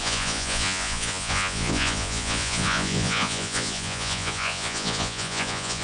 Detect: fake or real fake